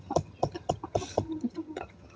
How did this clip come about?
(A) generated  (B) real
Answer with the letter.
A